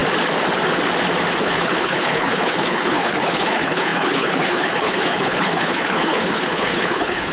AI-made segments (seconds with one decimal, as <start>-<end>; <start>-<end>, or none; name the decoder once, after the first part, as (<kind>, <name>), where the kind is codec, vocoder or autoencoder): 1.4-7.3 (codec, HILCodec)